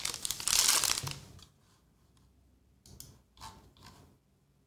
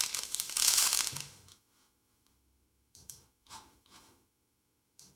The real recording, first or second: first